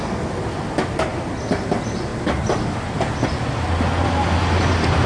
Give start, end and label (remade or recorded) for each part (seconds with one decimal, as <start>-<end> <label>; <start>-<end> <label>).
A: 0.0-5.1 recorded